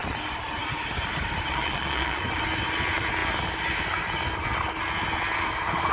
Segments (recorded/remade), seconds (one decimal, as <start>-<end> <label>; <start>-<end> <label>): 0.0-1.5 recorded; 1.5-2.2 remade; 2.2-5.9 recorded

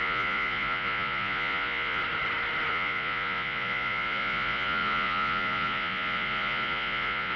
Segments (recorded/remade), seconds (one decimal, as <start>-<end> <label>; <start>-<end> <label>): 0.0-2.0 remade; 2.0-2.7 recorded; 2.7-7.4 remade

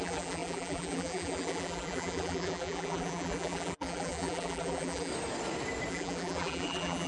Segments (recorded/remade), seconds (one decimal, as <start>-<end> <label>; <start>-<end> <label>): 0.0-5.1 remade; 5.1-5.9 recorded; 5.9-7.1 remade

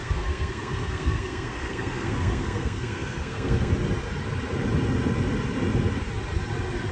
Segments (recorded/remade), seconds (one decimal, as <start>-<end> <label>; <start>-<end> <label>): 0.0-3.7 remade; 3.7-6.9 recorded

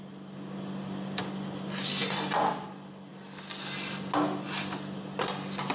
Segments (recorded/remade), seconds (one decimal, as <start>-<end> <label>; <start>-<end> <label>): 0.0-5.7 recorded